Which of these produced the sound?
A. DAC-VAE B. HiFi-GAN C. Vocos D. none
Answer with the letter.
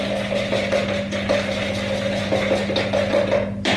D